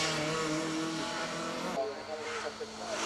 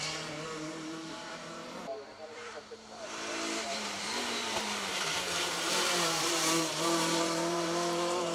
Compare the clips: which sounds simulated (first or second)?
second